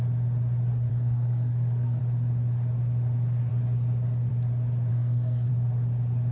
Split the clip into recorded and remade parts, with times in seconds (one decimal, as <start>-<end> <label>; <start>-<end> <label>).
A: 0.0-0.9 recorded; 0.9-2.0 remade; 2.0-4.9 recorded; 4.9-5.5 remade; 5.5-6.3 recorded